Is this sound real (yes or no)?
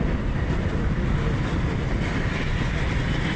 yes